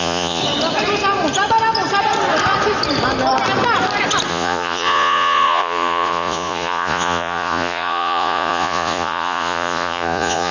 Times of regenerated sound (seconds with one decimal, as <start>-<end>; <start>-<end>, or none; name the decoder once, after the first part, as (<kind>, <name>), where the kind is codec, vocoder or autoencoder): 0.0-0.4 (vocoder, Vocos); 4.3-10.5